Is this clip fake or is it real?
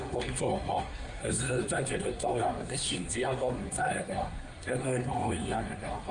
fake